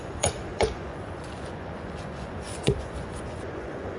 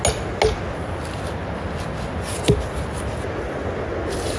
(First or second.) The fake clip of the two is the first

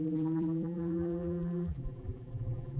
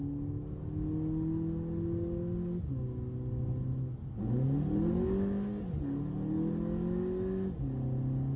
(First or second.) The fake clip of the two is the first